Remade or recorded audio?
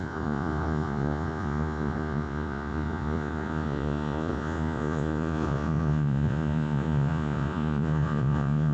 remade